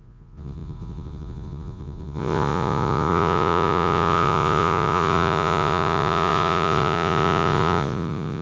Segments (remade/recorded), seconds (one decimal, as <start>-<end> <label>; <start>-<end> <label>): 0.0-8.4 remade